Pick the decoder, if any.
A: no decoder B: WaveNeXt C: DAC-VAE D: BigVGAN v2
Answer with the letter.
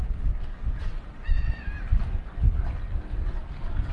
A